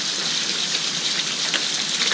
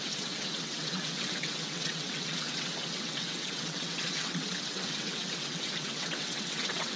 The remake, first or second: second